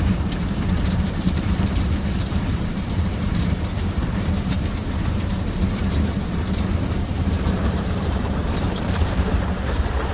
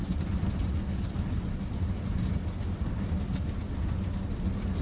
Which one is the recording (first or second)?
second